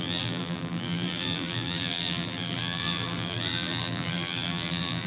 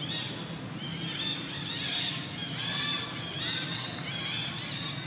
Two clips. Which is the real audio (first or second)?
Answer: second